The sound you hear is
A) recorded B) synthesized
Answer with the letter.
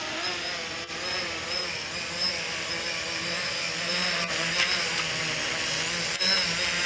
A